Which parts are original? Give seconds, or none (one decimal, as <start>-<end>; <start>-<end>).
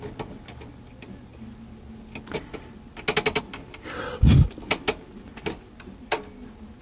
0.0-6.8